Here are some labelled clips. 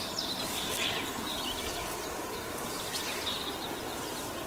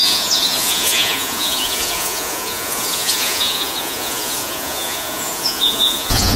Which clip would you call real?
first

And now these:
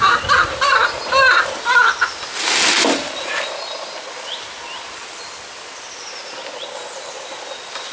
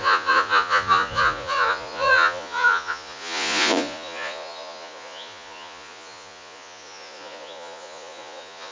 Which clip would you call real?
first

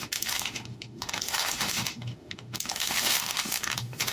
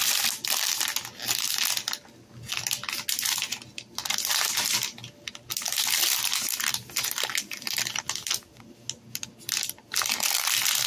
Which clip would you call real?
second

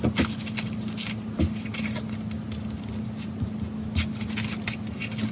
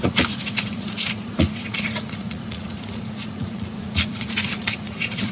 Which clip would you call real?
first